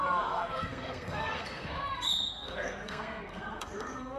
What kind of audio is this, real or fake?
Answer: fake